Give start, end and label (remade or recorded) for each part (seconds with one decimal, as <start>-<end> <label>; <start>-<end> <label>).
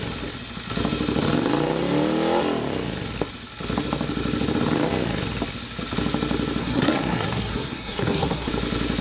0.0-6.6 recorded; 6.6-8.5 remade; 8.5-9.0 recorded